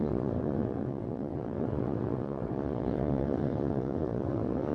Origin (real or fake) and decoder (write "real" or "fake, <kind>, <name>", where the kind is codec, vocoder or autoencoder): fake, vocoder, WaveNeXt